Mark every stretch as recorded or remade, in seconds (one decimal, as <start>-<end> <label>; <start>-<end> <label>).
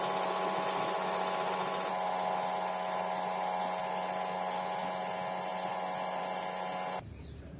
0.0-7.6 recorded